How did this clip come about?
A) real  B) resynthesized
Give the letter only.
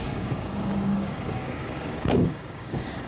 B